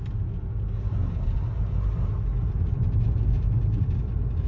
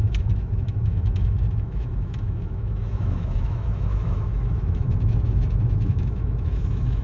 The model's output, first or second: second